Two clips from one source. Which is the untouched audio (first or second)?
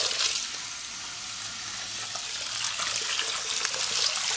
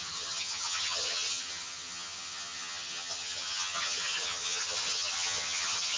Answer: first